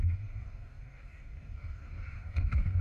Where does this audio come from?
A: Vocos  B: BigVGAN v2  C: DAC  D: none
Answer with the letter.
C